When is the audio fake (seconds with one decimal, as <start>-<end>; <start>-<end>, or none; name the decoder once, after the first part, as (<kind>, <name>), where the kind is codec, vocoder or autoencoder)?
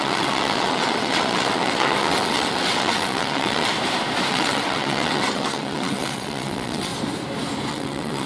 0.0-3.7 (vocoder, WaveNeXt); 4.3-6.9; 7.7-8.3